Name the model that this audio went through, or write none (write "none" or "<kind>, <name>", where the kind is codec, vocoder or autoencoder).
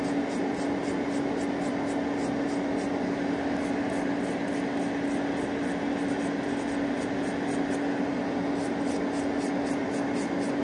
none